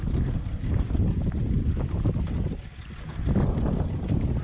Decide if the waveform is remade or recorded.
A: recorded